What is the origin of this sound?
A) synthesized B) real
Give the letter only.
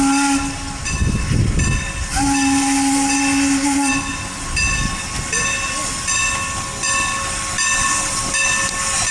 B